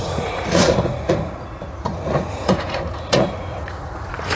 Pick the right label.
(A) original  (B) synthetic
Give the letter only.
B